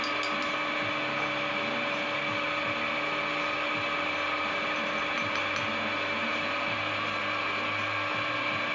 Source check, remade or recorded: recorded